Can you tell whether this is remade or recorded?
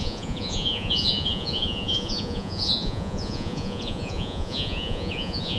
remade